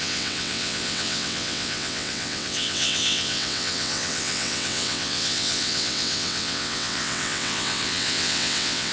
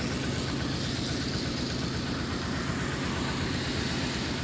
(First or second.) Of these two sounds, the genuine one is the second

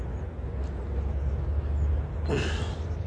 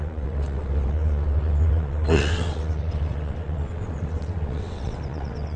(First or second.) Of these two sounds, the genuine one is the first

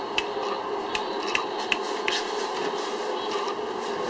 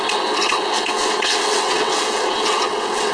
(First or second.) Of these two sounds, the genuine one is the first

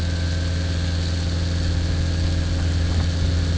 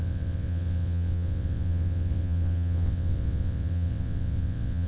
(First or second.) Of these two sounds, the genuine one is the first